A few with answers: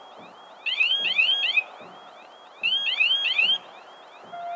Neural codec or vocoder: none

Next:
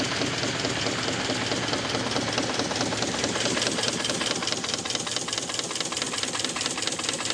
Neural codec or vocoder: none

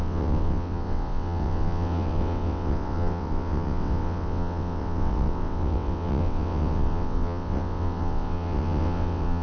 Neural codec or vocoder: vocoder, WaveNeXt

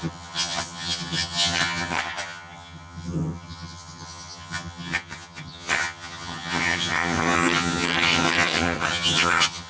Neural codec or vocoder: vocoder, HiFi-GAN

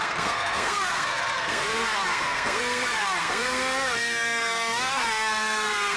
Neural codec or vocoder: codec, SNAC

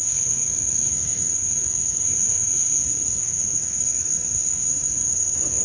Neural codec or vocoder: codec, SNAC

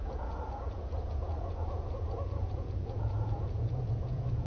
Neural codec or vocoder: vocoder, Vocos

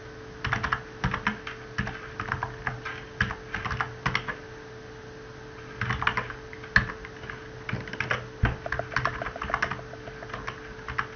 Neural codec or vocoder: none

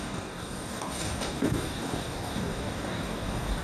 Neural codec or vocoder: codec, DAC